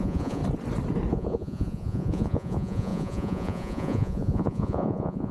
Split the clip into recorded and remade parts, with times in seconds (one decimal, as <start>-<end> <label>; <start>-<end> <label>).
0.0-0.4 remade; 0.4-1.1 recorded; 1.1-5.3 remade